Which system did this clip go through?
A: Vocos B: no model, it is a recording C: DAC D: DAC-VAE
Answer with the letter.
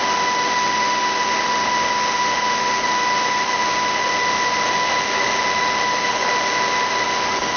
D